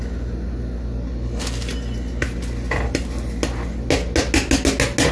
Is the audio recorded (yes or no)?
yes